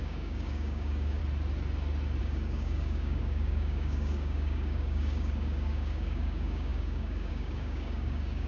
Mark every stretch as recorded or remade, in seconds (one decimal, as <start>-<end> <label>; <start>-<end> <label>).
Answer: 0.0-1.2 remade; 1.2-2.2 recorded; 2.2-8.5 remade